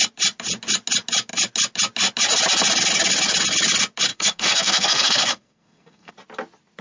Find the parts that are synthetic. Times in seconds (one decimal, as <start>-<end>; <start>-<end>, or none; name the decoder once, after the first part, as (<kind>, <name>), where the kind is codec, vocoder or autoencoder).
4.1-6.1 (codec, SNAC)